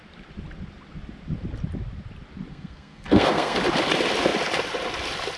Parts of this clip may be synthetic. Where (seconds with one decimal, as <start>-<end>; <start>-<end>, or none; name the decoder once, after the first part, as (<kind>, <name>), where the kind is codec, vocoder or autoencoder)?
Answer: 2.5-3.6 (codec, SNAC)